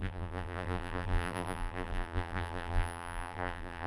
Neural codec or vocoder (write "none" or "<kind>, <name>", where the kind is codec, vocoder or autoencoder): vocoder, BigVGAN v2